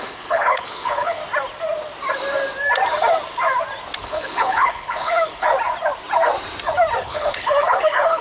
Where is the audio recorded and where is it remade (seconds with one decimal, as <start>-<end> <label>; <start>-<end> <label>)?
0.0-1.2 remade; 1.2-4.0 recorded; 4.0-5.5 remade; 5.5-7.0 recorded; 7.0-8.2 remade